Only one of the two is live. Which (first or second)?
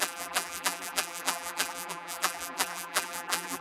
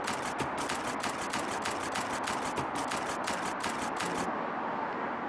second